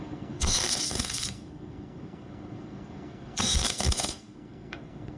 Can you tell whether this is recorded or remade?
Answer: remade